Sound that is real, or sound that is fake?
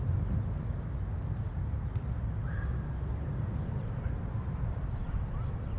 real